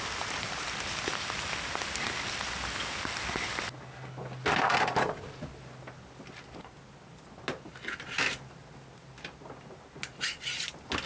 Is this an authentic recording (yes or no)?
yes